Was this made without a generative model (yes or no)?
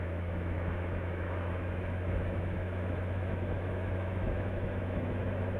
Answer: no